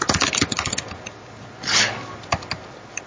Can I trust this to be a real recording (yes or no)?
yes